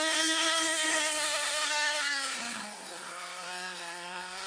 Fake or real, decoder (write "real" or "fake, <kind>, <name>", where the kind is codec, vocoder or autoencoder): fake, codec, SNAC